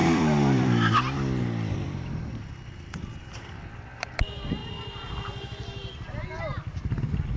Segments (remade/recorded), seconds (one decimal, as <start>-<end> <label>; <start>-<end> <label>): 0.0-3.6 remade; 3.6-7.4 recorded